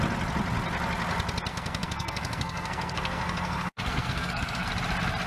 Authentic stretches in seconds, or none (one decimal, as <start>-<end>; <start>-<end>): 0.0-1.5; 4.7-5.3